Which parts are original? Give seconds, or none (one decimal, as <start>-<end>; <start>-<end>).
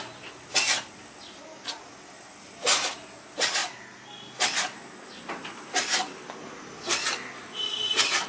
0.0-8.3